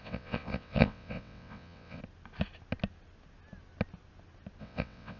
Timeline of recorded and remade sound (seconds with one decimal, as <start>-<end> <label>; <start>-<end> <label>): 0.0-2.0 remade; 2.0-4.6 recorded; 4.6-5.2 remade